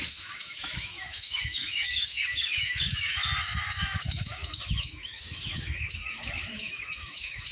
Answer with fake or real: fake